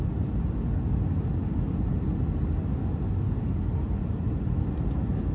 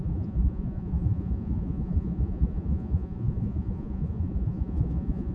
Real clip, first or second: first